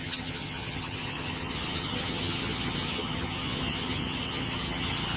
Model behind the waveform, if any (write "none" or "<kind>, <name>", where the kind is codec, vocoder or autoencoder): vocoder, HiFi-GAN